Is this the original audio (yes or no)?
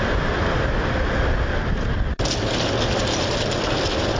yes